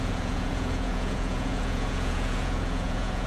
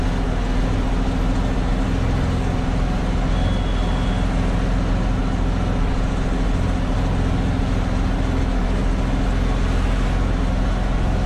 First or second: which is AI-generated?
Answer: first